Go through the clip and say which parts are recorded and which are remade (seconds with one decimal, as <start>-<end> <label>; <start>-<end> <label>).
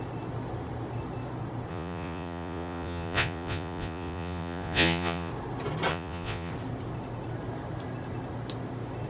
0.0-1.7 recorded; 1.7-5.3 remade; 5.3-5.9 recorded; 5.9-6.5 remade; 6.5-9.1 recorded